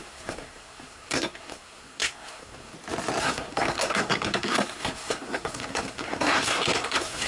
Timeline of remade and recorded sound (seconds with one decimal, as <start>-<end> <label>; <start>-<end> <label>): 0.0-2.7 remade; 2.7-3.2 recorded; 3.2-7.3 remade